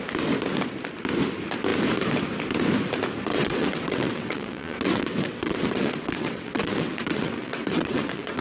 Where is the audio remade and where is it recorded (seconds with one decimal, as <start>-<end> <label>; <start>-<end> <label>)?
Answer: 0.0-3.3 recorded; 3.3-8.4 remade